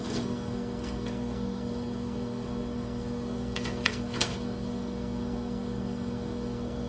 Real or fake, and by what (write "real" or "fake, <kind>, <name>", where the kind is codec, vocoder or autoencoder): fake, codec, SNAC